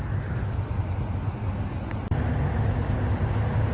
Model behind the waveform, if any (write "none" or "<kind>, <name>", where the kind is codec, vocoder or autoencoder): none